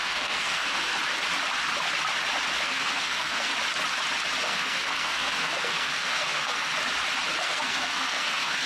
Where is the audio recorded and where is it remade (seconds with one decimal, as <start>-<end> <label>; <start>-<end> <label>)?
0.0-0.9 remade; 0.9-2.6 recorded; 2.6-3.5 remade; 3.5-4.4 recorded; 4.4-6.7 remade; 6.7-7.4 recorded; 7.4-8.7 remade